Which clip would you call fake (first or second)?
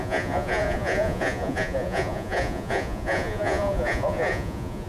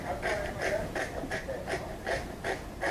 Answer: first